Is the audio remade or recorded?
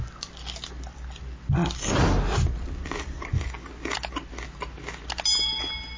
recorded